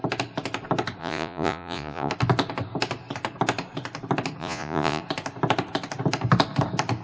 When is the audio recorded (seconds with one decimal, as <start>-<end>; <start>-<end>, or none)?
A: 0.0-1.0; 2.1-4.4; 5.0-7.0